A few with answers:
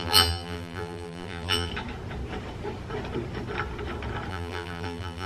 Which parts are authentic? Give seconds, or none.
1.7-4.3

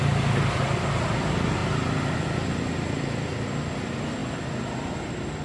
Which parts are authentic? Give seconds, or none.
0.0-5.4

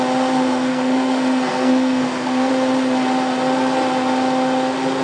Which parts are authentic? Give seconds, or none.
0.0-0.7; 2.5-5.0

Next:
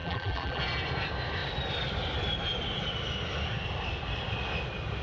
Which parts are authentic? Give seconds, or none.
0.6-5.0

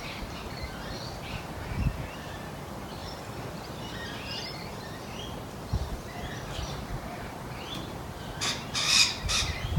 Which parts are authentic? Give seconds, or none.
3.0-3.5

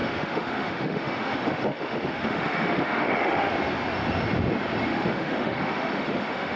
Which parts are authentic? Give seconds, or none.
3.5-4.9

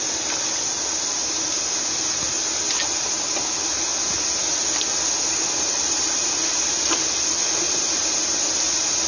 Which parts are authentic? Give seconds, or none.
0.0-9.1